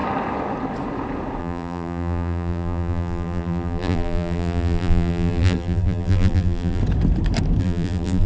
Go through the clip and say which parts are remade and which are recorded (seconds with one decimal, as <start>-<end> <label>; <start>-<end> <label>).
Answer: 0.0-1.4 recorded; 1.4-6.8 remade; 6.8-7.6 recorded; 7.6-8.3 remade